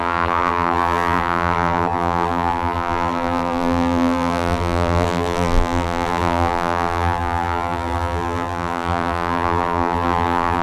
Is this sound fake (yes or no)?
yes